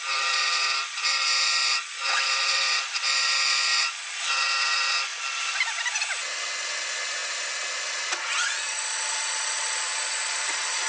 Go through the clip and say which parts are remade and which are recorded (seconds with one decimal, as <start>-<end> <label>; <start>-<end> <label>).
0.0-5.1 remade; 5.1-6.6 recorded; 6.6-10.9 remade